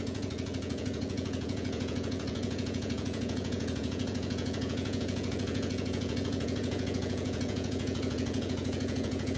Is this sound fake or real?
fake